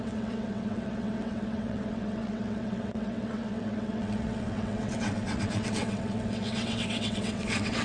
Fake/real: fake